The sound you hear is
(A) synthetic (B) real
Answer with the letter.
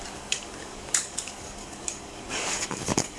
A